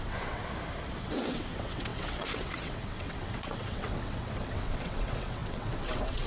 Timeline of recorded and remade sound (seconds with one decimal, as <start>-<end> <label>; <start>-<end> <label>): 0.0-0.4 remade; 0.4-1.0 recorded; 1.0-6.3 remade